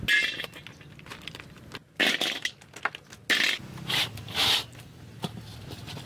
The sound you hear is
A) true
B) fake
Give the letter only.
A